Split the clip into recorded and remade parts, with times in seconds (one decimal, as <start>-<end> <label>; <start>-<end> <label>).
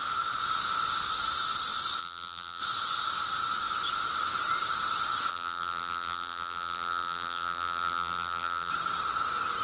0.0-2.0 recorded; 2.0-2.6 remade; 2.6-5.3 recorded; 5.3-8.7 remade; 8.7-9.6 recorded